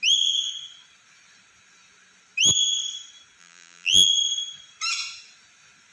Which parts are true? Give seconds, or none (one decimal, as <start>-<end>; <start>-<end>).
0.0-3.4; 4.1-5.9